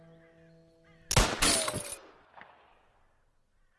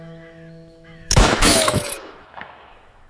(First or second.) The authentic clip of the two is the first